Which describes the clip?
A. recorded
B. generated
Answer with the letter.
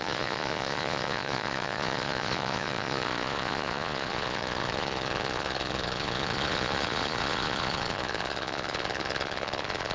B